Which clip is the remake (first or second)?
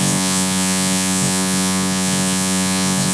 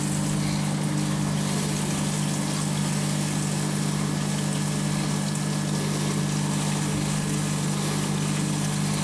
first